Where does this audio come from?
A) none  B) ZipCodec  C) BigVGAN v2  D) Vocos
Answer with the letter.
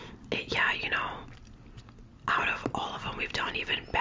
A